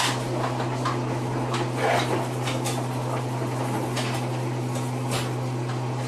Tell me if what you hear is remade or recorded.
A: recorded